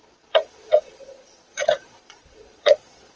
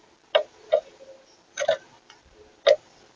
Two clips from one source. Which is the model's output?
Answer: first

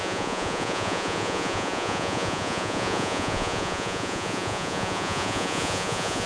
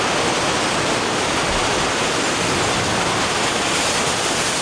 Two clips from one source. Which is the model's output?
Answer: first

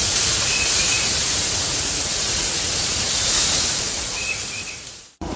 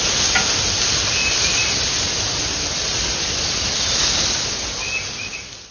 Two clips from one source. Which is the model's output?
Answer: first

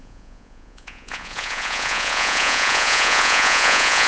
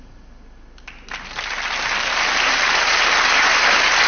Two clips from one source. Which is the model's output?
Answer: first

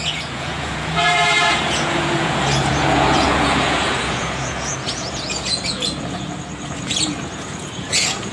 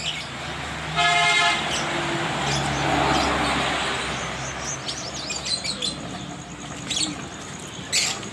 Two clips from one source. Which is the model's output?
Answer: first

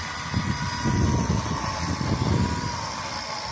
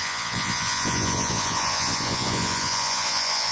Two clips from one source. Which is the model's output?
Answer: second